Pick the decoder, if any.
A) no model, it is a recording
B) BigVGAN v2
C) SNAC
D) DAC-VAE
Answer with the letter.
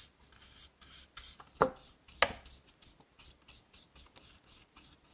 A